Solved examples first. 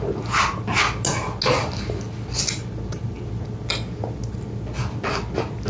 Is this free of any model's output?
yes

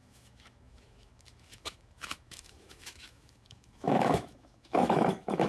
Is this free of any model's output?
no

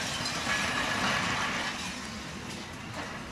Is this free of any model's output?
yes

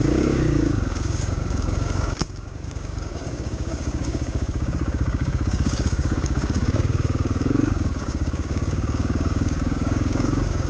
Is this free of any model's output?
no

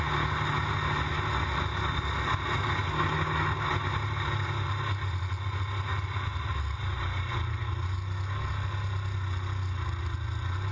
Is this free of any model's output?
yes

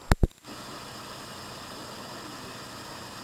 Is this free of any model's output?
yes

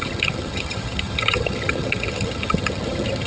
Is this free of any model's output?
no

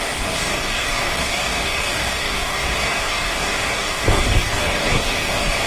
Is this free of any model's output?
no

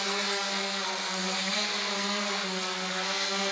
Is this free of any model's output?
no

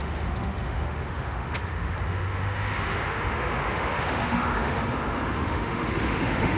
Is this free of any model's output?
no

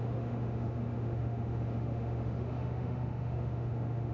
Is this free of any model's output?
no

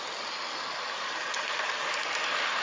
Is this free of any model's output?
yes